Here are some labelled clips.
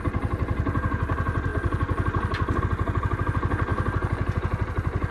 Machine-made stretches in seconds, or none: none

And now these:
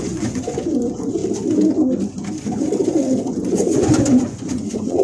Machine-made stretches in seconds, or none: 0.0-1.2 (vocoder, Vocos); 3.3-5.0

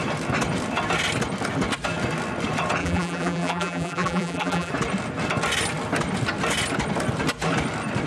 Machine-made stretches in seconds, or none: 2.8-4.7 (vocoder, BigVGAN v2)

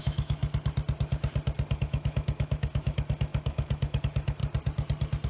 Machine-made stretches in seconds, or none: 0.0-0.4 (autoencoder, DAC-VAE); 1.8-4.4